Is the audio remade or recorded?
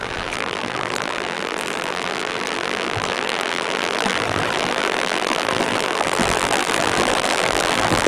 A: remade